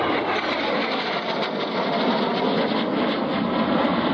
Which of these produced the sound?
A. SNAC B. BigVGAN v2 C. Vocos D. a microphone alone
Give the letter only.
D